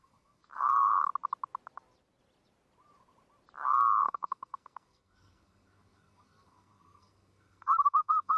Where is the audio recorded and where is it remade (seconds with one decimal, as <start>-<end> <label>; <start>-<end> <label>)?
0.0-1.1 remade; 1.1-4.0 recorded; 4.0-8.4 remade